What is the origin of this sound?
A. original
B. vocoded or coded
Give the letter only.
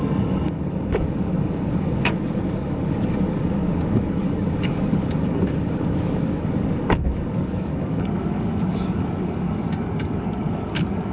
B